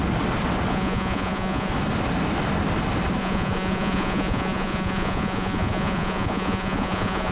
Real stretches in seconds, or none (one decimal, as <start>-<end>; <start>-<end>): 0.0-0.7; 1.7-3.2